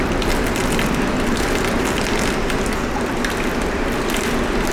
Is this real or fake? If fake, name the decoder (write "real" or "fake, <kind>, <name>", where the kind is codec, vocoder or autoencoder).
fake, vocoder, BigVGAN v2